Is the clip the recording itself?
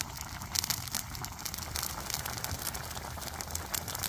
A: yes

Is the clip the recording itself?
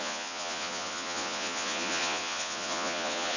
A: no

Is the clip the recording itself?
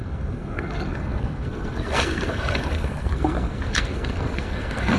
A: no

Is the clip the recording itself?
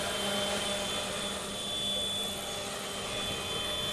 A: yes